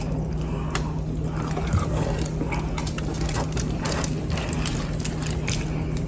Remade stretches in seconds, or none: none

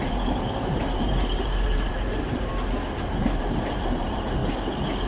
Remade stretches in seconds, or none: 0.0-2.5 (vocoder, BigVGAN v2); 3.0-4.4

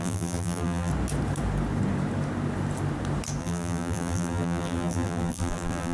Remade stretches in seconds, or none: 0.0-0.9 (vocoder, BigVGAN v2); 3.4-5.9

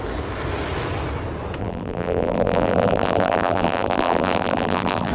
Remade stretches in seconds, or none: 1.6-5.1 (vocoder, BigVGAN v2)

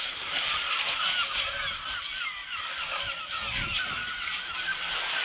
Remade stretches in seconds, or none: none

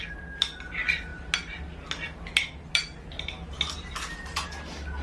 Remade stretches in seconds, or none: none

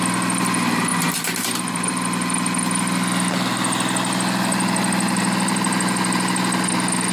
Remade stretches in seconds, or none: 0.9-1.9 (vocoder, BigVGAN v2)

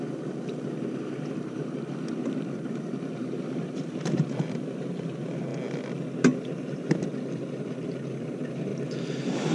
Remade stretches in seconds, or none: 0.0-5.5 (vocoder, BigVGAN v2); 6.4-8.7